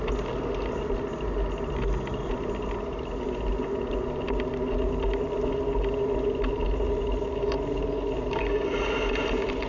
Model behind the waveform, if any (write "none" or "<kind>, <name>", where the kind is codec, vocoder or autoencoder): none